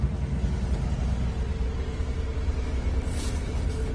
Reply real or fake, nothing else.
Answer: real